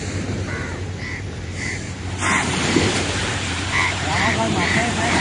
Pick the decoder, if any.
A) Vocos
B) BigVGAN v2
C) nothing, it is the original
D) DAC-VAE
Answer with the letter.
B